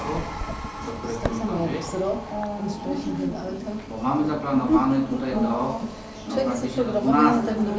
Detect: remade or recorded recorded